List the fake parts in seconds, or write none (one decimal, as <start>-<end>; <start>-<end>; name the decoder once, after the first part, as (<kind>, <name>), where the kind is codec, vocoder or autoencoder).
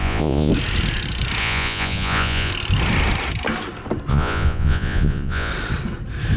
0.0-0.5 (vocoder, Vocos); 1.4-2.5; 4.1-5.5